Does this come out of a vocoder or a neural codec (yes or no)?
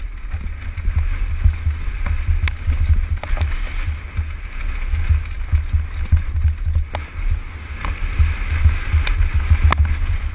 no